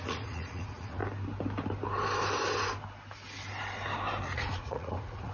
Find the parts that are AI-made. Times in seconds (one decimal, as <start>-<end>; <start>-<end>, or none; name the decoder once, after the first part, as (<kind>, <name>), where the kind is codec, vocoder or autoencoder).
0.0-1.0 (vocoder, Vocos); 4.2-5.3